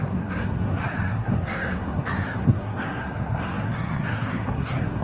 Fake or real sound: fake